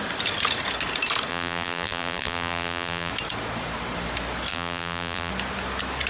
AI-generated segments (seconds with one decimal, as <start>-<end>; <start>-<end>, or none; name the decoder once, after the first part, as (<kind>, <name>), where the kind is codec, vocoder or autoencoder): 1.3-3.1 (vocoder, BigVGAN v2); 4.5-5.3